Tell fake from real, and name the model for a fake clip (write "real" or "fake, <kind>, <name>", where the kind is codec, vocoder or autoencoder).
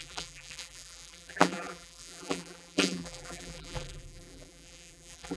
fake, vocoder, BigVGAN v2